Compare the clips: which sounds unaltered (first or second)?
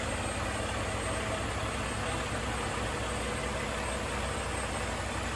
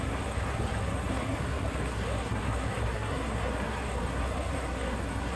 first